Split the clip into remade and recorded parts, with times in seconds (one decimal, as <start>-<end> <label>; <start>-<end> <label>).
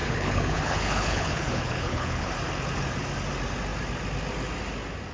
0.0-2.3 remade; 2.3-5.1 recorded